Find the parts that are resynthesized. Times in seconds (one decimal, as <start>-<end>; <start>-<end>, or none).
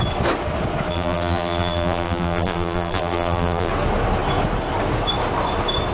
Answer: 0.9-3.7